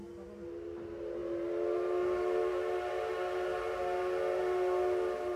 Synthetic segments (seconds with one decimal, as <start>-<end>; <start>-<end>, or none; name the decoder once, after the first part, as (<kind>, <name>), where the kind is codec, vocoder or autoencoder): none

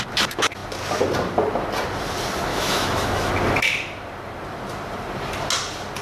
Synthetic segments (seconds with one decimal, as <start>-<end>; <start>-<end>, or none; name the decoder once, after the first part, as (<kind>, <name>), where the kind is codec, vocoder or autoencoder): 2.5-3.3 (autoencoder, DAC-VAE)

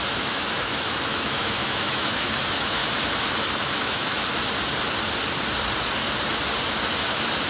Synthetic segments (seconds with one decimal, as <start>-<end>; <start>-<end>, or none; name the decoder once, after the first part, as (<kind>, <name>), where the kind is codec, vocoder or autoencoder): 0.0-2.8 (autoencoder, DAC-VAE); 3.7-4.2

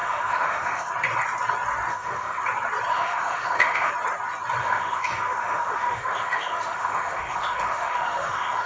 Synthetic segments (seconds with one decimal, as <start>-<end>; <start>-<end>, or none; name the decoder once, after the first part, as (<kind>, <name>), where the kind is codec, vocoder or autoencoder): 0.0-0.9 (autoencoder, DAC-VAE); 1.9-2.4; 2.9-3.9; 4.6-8.7

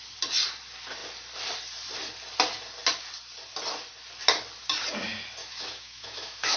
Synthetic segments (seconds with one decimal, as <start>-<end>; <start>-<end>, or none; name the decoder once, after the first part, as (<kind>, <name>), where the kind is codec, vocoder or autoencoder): 5.4-6.6 (autoencoder, DAC-VAE)

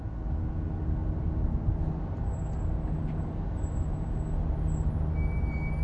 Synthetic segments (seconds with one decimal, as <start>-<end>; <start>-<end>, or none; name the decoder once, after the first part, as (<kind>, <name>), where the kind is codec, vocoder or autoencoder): none